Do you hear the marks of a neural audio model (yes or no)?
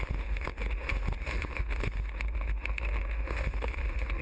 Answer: yes